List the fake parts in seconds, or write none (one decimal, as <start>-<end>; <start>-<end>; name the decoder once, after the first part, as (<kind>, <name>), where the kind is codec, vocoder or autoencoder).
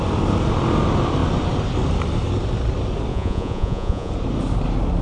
3.1-4.1 (vocoder, Vocos)